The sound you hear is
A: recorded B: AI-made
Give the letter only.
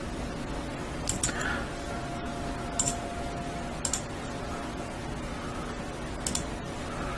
A